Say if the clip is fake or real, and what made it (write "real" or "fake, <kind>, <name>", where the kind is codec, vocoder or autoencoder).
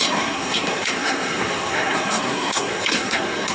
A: fake, codec, SNAC